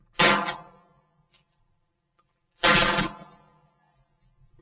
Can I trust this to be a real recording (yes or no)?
yes